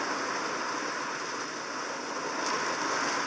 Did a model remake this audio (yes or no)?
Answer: no